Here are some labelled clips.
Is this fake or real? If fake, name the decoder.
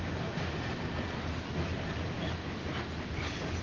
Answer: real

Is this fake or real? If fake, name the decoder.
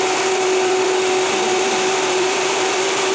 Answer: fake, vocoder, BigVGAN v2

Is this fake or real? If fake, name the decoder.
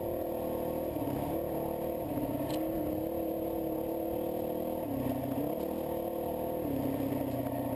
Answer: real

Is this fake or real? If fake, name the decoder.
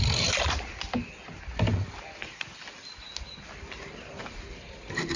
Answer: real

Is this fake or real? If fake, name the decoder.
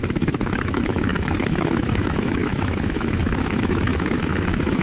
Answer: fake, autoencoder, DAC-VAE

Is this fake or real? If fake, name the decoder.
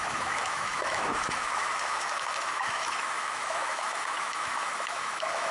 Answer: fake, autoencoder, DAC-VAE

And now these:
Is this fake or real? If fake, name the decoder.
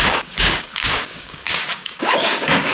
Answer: fake, codec, DAC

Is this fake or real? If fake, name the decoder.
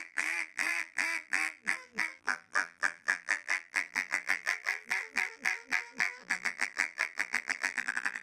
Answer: fake, vocoder, BigVGAN v2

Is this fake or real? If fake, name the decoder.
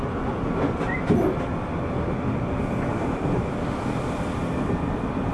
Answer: real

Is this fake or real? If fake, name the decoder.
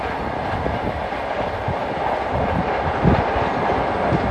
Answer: real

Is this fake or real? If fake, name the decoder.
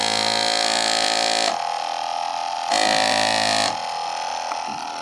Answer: real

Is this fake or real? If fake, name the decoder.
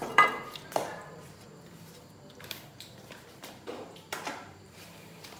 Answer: fake, vocoder, BigVGAN v2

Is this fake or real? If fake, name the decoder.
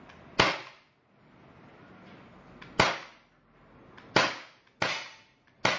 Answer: real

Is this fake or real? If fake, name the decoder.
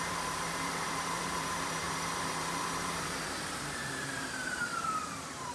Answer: fake, vocoder, BigVGAN v2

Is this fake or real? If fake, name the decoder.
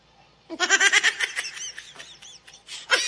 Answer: real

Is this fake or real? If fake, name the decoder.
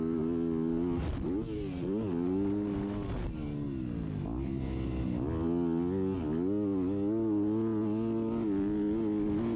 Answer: real